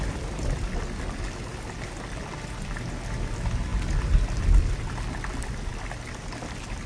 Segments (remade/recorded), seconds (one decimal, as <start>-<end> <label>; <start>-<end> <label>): 0.0-6.9 recorded